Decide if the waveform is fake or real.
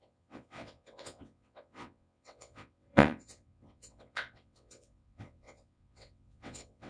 fake